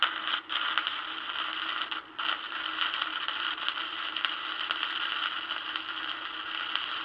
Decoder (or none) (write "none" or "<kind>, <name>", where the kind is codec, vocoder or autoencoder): none